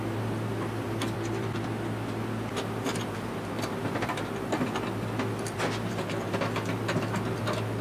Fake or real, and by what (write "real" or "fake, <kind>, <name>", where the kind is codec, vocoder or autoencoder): real